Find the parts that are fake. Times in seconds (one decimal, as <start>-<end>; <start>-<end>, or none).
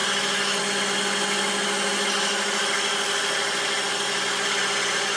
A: none